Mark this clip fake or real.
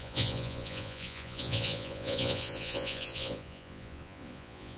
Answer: fake